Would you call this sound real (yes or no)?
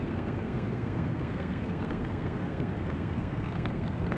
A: no